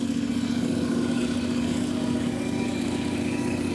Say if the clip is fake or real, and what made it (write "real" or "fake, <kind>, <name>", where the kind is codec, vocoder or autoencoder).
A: fake, codec, DAC